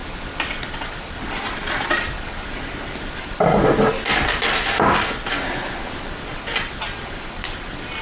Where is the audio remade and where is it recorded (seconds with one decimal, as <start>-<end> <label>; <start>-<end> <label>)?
0.0-8.0 recorded

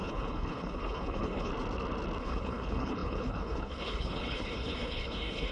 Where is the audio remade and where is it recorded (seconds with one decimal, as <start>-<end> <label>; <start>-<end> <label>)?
0.0-1.5 remade; 1.5-2.2 recorded; 2.2-5.5 remade